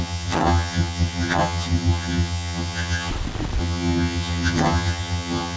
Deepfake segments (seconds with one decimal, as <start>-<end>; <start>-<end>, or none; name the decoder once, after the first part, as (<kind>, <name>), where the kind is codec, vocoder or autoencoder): 0.0-3.1 (vocoder, HiFi-GAN); 3.6-5.6